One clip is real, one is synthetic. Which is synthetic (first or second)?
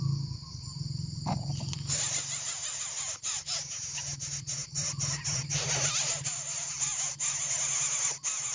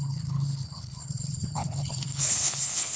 second